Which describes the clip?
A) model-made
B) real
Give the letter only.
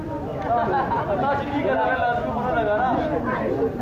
B